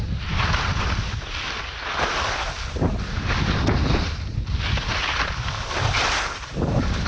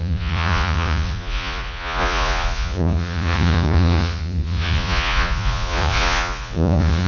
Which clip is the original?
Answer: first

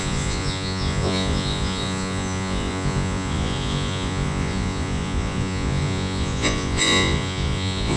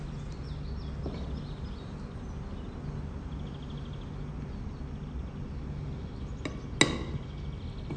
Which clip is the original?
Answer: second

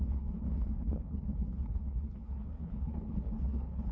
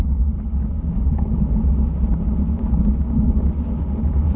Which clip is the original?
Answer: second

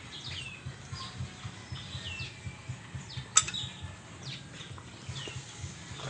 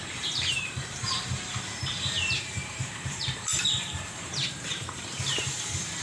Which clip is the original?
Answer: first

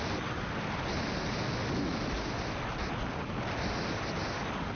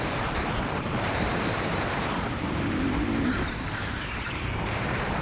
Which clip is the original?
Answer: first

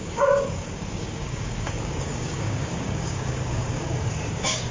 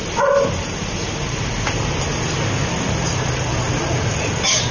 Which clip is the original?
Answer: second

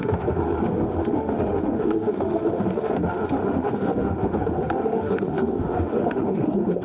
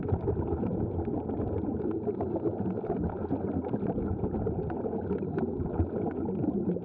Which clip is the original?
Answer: second